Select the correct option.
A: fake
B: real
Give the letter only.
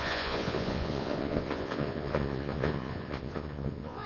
A